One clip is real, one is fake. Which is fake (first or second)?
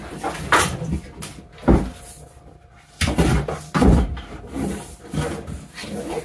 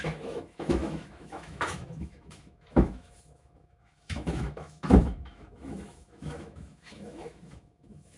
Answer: second